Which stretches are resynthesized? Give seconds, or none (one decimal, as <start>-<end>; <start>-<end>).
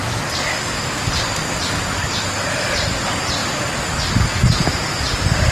none